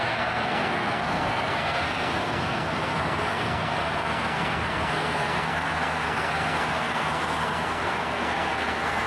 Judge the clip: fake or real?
fake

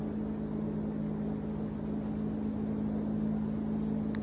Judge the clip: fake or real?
real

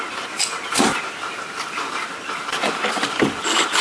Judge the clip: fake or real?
fake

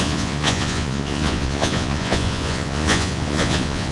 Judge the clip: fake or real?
fake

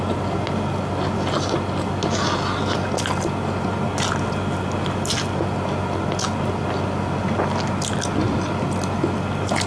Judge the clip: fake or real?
real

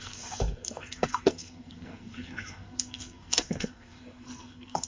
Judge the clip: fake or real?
fake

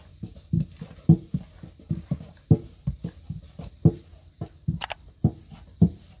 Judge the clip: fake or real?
real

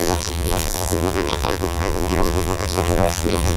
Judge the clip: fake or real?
fake